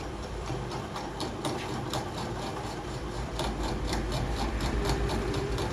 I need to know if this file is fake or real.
fake